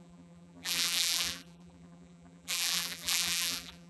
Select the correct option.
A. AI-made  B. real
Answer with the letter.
A